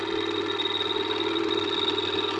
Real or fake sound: real